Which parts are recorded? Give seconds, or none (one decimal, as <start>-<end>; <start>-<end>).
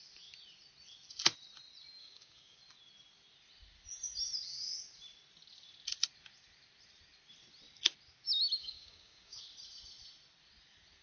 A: 0.0-2.0; 2.6-8.6; 9.4-11.0